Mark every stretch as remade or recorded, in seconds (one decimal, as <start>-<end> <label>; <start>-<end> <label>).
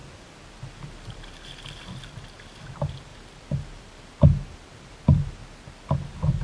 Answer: 0.0-6.4 recorded